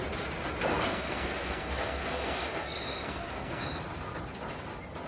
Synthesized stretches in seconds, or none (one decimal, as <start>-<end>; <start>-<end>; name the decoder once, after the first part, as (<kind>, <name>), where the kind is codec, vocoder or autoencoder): 0.7-3.8 (codec, SNAC)

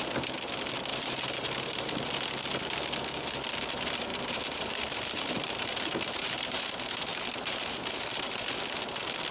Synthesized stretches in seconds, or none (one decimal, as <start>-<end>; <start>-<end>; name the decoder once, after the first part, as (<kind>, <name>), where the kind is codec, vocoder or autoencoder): 0.9-1.9 (vocoder, BigVGAN v2); 4.1-8.5

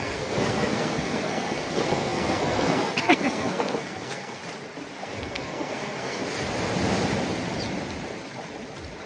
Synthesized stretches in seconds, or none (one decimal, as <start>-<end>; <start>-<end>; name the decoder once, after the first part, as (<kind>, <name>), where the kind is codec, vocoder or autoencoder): 0.0-4.4 (codec, SNAC); 5.0-6.2